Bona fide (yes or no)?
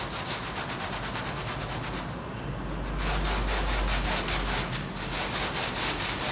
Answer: yes